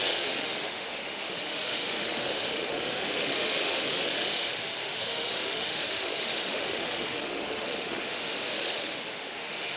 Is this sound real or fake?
fake